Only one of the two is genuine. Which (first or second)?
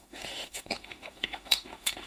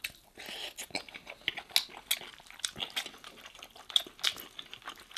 second